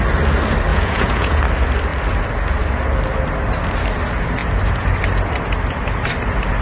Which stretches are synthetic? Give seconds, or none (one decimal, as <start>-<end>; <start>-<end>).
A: 0.7-1.4